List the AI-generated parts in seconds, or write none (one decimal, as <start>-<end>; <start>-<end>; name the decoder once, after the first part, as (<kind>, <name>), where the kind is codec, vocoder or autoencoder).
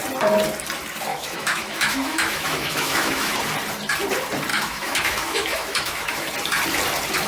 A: 1.1-3.4 (autoencoder, DAC-VAE); 4.5-6.3